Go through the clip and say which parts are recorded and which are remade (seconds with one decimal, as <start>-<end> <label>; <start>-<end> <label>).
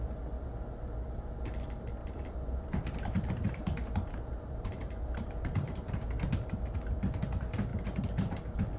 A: 0.0-2.0 recorded; 2.0-6.8 remade; 6.8-7.7 recorded; 7.7-8.8 remade